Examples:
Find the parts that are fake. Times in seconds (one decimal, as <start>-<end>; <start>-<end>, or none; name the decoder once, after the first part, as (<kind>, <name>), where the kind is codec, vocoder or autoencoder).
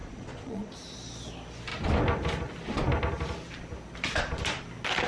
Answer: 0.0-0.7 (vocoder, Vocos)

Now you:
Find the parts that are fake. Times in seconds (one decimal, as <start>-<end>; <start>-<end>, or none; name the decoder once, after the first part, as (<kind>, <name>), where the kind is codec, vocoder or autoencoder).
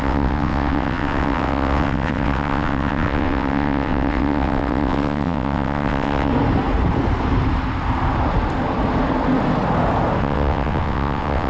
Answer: 0.0-6.3 (vocoder, WaveNeXt); 10.2-11.5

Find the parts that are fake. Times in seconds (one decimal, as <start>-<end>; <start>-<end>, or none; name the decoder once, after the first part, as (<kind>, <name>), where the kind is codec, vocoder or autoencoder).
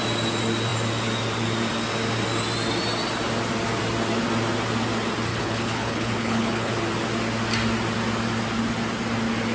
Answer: 5.3-6.7 (codec, HILCodec)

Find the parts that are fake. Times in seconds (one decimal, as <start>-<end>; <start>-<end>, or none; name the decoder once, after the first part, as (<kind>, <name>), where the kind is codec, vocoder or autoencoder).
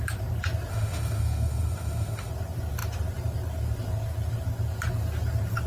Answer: 0.7-2.3 (autoencoder, DAC-VAE)